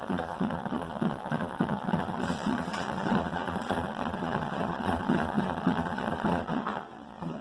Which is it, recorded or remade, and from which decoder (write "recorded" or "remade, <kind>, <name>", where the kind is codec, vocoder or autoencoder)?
remade, vocoder, Vocos